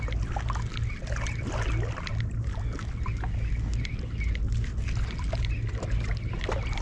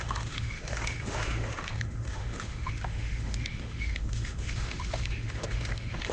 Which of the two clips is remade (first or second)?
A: second